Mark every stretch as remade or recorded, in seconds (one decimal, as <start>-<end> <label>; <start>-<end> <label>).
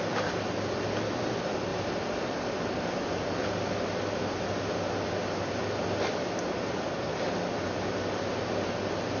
0.0-9.2 recorded